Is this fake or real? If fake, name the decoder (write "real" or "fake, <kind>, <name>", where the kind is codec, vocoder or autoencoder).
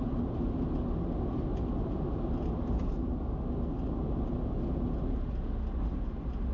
real